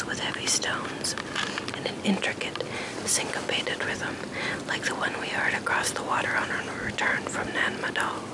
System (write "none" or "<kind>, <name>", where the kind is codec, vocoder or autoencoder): none